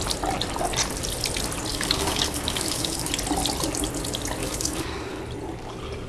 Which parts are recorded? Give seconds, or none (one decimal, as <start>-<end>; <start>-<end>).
0.0-1.7; 3.1-4.4; 5.2-6.1